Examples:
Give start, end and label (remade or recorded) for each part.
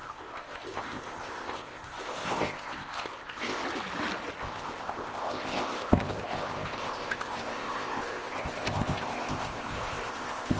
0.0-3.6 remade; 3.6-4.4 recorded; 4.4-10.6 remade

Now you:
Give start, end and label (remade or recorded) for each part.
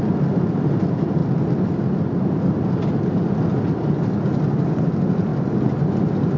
0.0-6.4 recorded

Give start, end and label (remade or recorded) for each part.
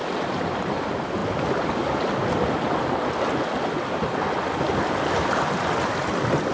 0.0-6.5 recorded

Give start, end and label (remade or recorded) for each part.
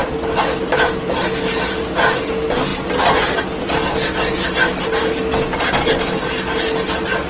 0.0-7.3 recorded